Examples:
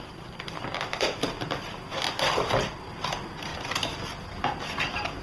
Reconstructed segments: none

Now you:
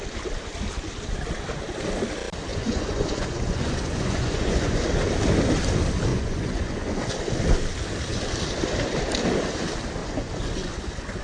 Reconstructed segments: 2.5-4.8 (vocoder, Vocos); 6.1-7.0; 10.0-10.7

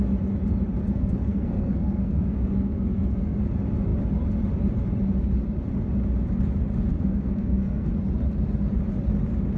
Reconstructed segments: 0.8-3.4 (codec, SNAC); 6.9-7.9

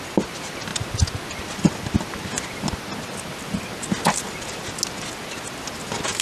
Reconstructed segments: none

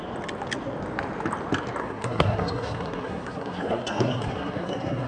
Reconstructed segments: 1.8-5.1 (codec, SNAC)

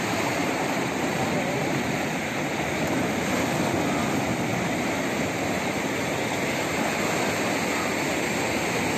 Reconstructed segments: 0.4-3.3 (vocoder, BigVGAN v2); 4.5-5.8